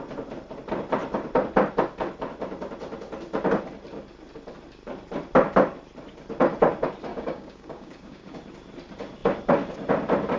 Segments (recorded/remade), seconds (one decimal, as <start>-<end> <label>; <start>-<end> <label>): 0.0-7.1 recorded; 7.1-8.4 remade; 8.4-10.4 recorded